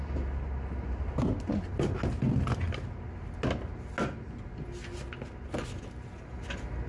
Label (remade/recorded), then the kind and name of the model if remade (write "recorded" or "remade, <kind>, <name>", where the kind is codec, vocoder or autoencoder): recorded